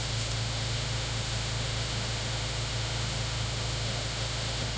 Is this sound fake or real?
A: fake